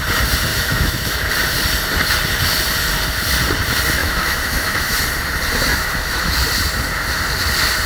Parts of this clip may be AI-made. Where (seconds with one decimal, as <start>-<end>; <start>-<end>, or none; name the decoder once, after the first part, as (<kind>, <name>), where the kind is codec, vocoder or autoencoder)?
0.5-1.3 (autoencoder, DAC-VAE); 4.0-5.0; 5.7-6.3